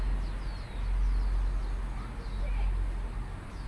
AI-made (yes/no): no